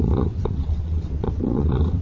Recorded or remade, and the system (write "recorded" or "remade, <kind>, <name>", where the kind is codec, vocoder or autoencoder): remade, vocoder, WaveNeXt